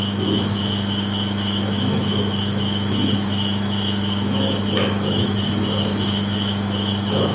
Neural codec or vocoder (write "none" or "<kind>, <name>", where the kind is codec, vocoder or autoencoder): autoencoder, DAC-VAE